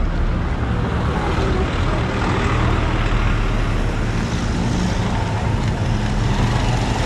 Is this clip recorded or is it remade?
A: recorded